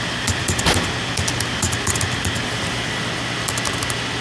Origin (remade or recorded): recorded